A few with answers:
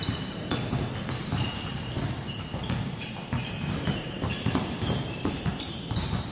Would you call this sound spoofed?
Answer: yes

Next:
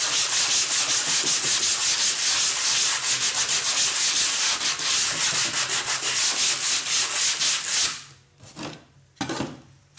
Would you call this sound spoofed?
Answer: no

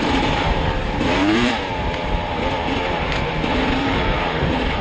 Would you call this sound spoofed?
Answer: yes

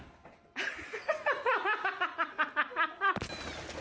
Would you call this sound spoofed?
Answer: no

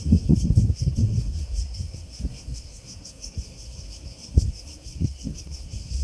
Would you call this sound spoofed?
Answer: yes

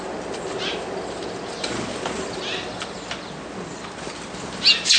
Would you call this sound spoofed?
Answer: no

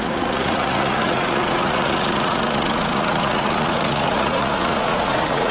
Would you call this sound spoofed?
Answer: yes